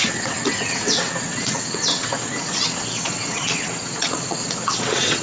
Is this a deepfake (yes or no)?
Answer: yes